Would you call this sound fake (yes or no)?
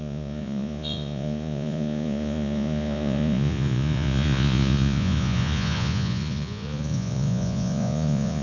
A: yes